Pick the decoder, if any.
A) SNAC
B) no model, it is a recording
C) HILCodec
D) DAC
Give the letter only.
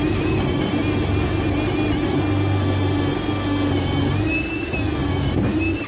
B